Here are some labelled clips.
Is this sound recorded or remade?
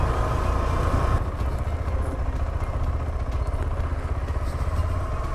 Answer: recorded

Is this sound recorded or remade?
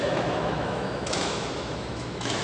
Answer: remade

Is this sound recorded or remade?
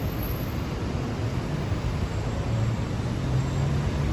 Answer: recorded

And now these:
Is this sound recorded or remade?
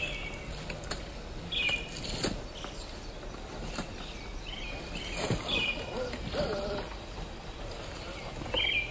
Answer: recorded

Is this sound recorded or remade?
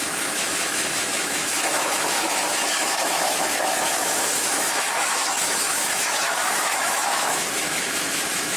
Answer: remade